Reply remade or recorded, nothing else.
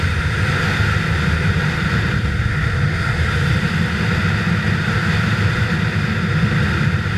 recorded